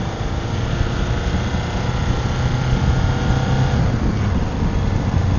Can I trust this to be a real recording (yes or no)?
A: yes